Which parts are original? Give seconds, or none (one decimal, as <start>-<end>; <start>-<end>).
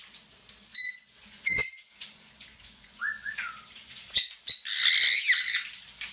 0.0-0.7; 4.2-6.1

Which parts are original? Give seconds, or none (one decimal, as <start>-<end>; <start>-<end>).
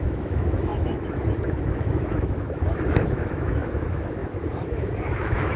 none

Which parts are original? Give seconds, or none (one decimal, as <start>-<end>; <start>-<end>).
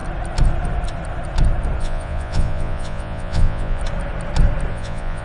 0.0-1.8; 3.8-4.7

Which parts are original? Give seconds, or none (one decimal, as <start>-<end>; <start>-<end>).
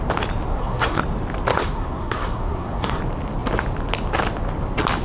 0.0-0.5; 1.0-1.5; 3.0-5.0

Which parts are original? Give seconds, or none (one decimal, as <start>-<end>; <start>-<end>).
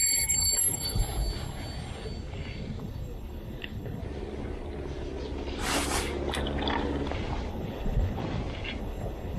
1.0-2.8; 4.0-7.5; 8.2-8.8